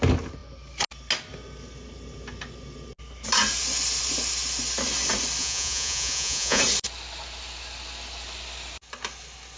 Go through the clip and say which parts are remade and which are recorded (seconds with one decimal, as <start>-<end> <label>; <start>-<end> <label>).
0.0-5.4 recorded; 5.4-6.6 remade; 6.6-9.6 recorded